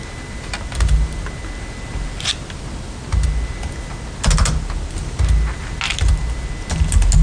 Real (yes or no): yes